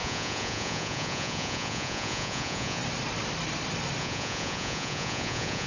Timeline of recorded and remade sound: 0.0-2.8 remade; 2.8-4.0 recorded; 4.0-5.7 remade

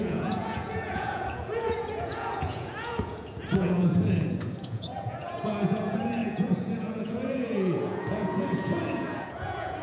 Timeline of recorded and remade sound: 0.0-9.8 remade

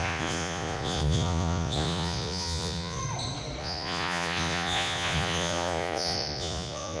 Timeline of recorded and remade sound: 0.0-3.0 remade; 3.0-3.6 recorded; 3.6-7.0 remade

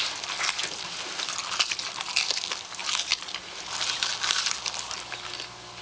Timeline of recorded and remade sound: 0.0-5.8 recorded

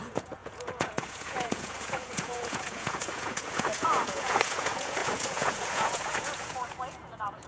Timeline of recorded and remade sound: 0.0-7.5 remade

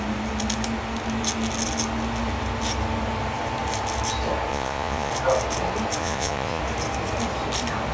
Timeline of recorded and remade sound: 0.0-4.5 recorded; 4.5-5.1 remade; 5.1-6.0 recorded; 6.0-6.6 remade; 6.6-7.9 recorded